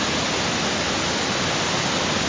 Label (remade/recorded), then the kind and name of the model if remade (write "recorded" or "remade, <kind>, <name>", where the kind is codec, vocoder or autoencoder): recorded